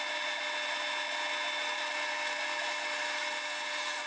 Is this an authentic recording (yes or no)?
yes